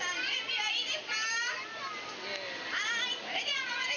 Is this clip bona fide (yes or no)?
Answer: yes